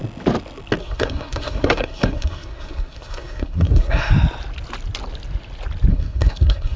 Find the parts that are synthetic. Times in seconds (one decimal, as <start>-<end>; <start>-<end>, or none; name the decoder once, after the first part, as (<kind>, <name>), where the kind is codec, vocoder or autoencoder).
0.8-4.1 (codec, SNAC); 5.9-6.8

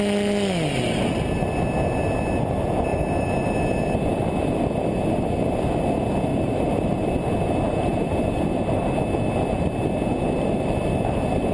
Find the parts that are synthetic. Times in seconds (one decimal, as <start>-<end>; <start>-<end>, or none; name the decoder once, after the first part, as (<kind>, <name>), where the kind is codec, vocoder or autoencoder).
2.9-5.8 (vocoder, BigVGAN v2); 6.3-7.1; 7.9-8.8

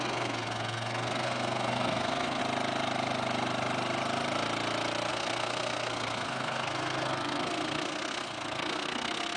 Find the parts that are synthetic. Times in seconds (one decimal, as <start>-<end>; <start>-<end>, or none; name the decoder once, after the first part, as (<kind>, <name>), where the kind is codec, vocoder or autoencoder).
0.0-2.4 (codec, SNAC); 5.1-9.4